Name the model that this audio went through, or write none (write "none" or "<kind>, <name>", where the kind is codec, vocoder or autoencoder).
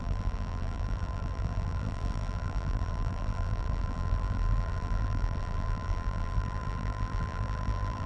vocoder, BigVGAN v2